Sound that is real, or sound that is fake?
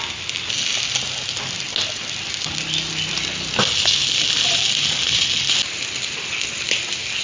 real